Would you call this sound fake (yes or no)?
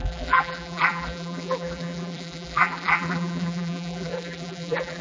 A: yes